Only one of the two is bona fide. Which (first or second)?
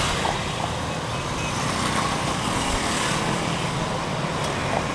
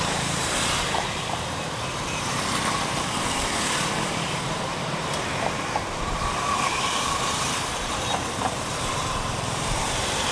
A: first